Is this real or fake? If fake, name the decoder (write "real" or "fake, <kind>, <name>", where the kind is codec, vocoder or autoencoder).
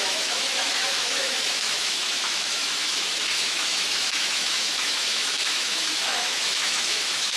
fake, autoencoder, DAC-VAE